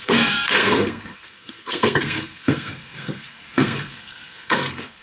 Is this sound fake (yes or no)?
yes